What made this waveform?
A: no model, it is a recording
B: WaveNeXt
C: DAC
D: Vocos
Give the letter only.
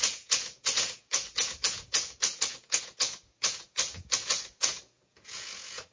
D